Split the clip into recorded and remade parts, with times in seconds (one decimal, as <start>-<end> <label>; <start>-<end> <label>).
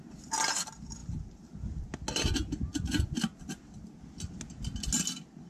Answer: 0.0-5.5 recorded